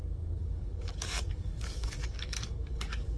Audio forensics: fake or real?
fake